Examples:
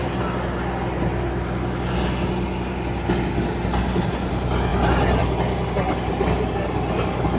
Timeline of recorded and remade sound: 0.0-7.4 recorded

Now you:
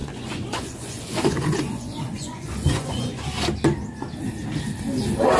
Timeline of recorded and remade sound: 0.0-3.2 remade; 3.2-5.4 recorded

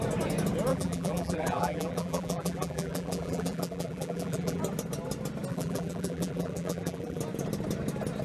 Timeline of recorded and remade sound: 0.0-0.7 recorded; 0.7-4.6 remade; 4.6-5.5 recorded; 5.5-7.2 remade; 7.2-8.2 recorded

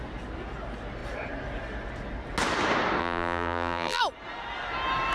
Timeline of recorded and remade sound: 0.0-3.0 recorded; 3.0-4.0 remade; 4.0-5.1 recorded